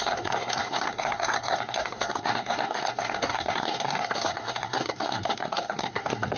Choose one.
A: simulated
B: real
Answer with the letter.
A